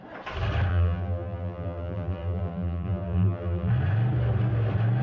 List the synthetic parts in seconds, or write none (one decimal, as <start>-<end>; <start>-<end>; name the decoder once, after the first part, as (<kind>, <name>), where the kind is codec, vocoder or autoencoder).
0.7-3.7 (vocoder, BigVGAN v2)